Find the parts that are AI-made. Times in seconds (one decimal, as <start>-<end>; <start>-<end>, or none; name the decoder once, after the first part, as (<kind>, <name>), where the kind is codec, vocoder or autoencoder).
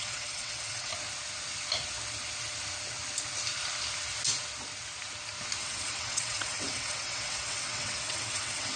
0.0-0.9 (vocoder, WaveNeXt); 5.6-8.8